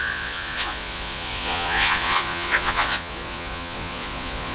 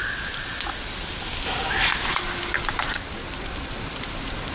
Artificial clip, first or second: first